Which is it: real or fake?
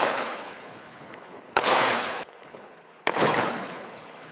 fake